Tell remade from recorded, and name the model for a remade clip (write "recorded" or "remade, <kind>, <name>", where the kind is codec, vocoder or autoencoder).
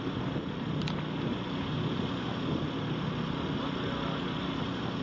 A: recorded